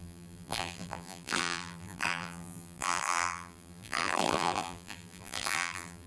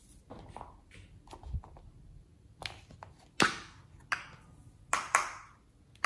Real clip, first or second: second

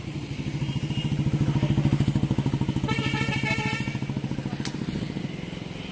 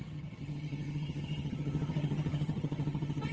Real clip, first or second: first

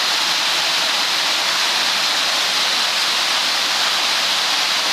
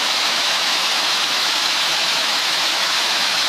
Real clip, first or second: first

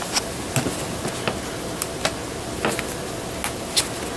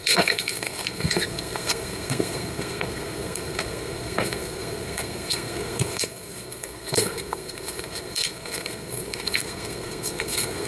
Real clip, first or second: first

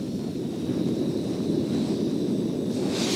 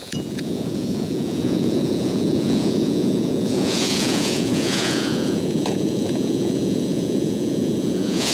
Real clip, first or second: first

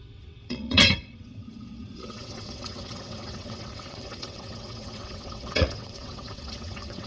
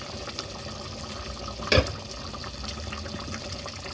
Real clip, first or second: second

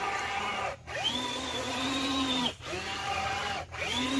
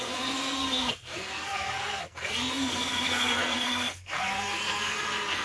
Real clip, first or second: first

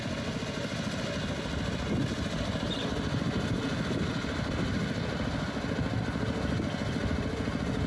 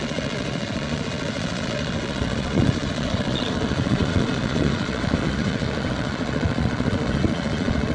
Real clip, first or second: first